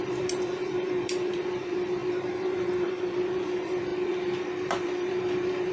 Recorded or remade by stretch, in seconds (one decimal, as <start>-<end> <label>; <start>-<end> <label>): 0.0-5.7 remade